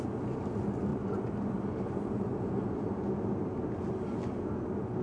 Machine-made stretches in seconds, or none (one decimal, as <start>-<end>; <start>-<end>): 0.9-1.6